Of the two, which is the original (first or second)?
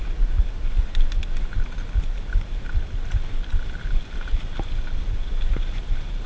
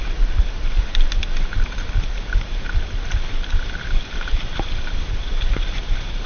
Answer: first